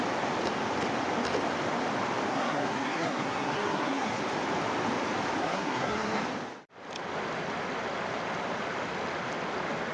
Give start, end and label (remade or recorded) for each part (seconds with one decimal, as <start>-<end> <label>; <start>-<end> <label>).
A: 0.0-2.3 recorded; 2.3-4.2 remade; 4.2-5.4 recorded; 5.4-6.2 remade; 6.2-9.9 recorded